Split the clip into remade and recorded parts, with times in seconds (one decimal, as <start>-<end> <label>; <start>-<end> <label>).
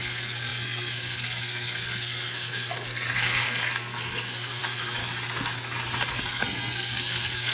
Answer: 0.0-5.0 remade; 5.0-6.1 recorded; 6.1-7.5 remade